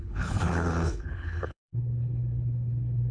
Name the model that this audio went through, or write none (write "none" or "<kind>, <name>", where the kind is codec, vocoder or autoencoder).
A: codec, HILCodec